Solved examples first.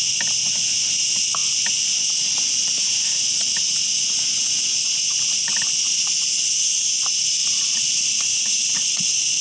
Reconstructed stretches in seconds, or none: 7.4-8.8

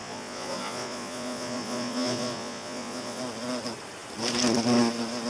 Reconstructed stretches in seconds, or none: 0.0-3.2

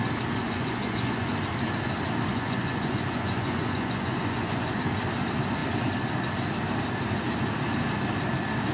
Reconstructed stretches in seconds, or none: 0.4-1.3; 2.3-4.8

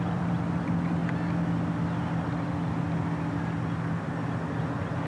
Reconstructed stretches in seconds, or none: none